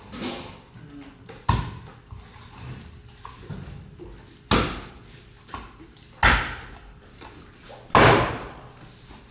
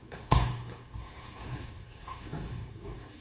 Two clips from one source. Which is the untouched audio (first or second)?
first